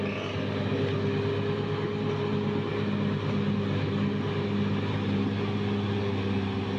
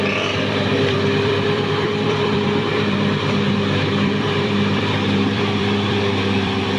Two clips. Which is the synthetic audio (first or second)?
second